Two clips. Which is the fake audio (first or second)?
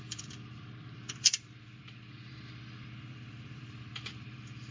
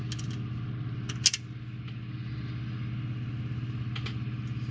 first